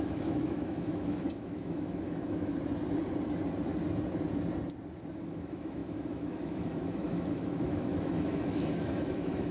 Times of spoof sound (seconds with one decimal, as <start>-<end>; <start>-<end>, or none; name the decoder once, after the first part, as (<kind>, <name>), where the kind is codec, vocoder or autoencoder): 0.0-2.5 (autoencoder, DAC-VAE); 5.3-9.5